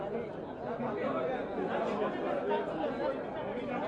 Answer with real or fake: real